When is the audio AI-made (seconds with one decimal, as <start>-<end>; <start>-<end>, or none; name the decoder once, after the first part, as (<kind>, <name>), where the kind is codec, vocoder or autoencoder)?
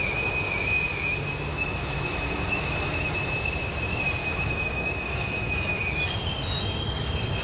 1.5-3.3 (autoencoder, DAC-VAE); 4.2-5.8